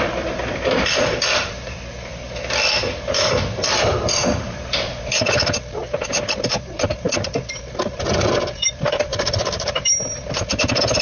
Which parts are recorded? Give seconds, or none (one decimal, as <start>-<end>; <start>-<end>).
none